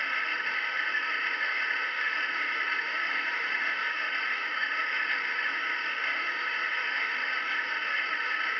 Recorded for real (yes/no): no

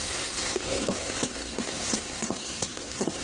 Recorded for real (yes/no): no